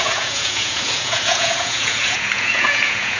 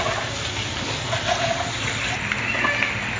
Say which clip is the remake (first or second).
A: first